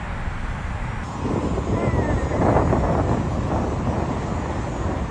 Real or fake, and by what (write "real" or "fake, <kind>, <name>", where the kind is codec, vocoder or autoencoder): real